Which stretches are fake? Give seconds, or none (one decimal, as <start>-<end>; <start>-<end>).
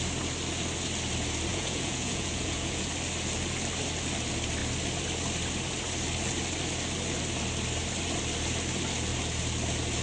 1.5-2.9